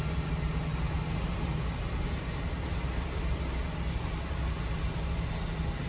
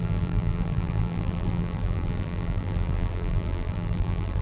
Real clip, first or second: first